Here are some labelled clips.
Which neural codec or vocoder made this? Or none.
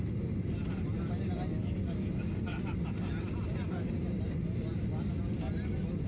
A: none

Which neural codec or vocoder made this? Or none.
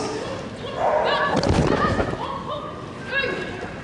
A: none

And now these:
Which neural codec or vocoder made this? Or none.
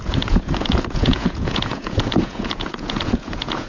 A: vocoder, Vocos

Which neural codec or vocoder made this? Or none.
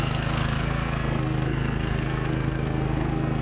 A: codec, SNAC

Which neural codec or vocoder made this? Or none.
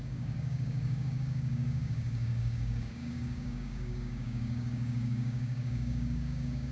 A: codec, DAC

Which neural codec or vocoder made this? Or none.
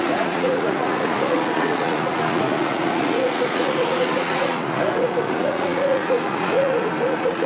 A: vocoder, Vocos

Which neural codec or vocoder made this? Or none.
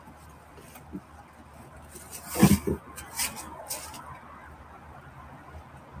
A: none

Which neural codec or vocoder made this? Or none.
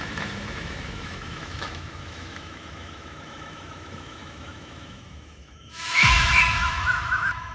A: autoencoder, DAC-VAE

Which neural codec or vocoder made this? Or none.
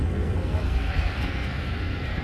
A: codec, SNAC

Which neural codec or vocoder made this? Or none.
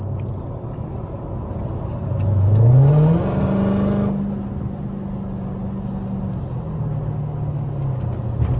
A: none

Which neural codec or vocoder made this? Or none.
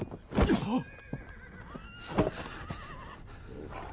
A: none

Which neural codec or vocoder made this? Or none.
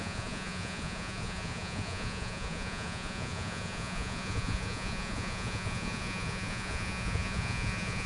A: vocoder, Vocos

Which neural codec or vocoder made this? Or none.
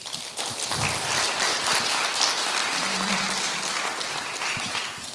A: vocoder, BigVGAN v2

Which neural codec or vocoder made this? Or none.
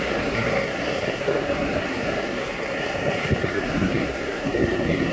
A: codec, SNAC